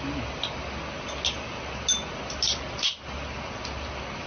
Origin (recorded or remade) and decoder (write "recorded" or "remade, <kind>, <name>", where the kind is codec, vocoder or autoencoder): recorded